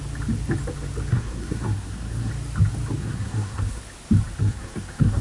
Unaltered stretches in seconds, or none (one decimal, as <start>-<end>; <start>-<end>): 0.0-1.1; 2.3-3.0; 3.8-4.4